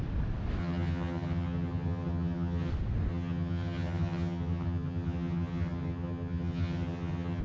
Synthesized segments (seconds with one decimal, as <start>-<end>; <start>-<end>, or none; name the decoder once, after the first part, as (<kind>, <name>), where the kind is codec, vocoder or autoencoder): 0.6-2.7 (vocoder, HiFi-GAN); 3.1-7.4